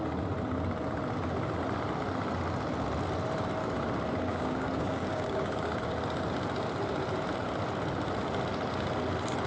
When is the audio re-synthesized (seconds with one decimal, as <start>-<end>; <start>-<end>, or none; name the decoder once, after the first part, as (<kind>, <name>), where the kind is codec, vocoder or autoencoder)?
4.3-6.0 (codec, DAC)

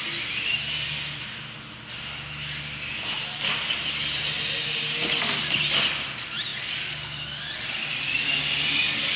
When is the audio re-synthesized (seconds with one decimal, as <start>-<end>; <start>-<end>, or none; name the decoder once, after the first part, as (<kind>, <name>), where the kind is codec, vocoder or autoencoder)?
none

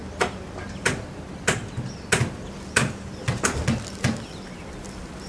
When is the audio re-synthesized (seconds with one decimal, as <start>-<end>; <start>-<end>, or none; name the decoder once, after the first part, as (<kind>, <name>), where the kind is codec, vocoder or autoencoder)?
none

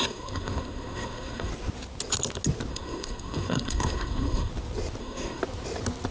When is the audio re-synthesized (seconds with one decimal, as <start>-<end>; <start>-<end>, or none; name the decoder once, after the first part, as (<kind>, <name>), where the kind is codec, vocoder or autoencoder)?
0.0-1.5 (codec, SNAC); 2.7-4.5; 5.0-5.4